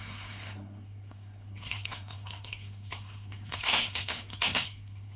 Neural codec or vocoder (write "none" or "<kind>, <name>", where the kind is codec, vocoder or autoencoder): codec, SNAC